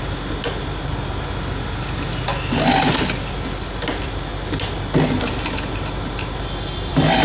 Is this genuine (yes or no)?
yes